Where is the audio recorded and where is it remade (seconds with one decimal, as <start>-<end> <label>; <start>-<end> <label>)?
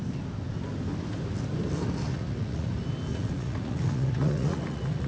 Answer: 0.0-2.1 recorded; 2.1-2.7 remade; 2.7-3.1 recorded; 3.1-5.1 remade